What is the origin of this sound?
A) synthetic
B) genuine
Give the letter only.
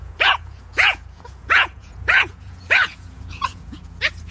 A